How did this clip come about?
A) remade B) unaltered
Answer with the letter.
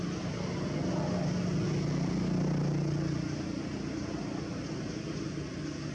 B